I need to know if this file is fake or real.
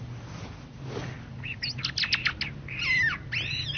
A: real